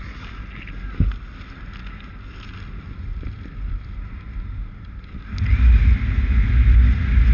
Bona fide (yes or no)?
yes